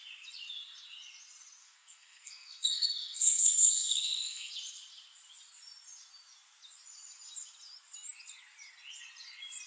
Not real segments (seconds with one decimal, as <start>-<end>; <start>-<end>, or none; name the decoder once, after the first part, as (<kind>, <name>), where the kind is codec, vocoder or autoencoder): 1.6-4.5 (codec, SNAC)